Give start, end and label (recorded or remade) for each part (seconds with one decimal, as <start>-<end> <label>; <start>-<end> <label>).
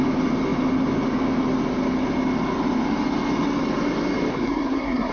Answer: 0.0-4.3 recorded; 4.3-5.1 remade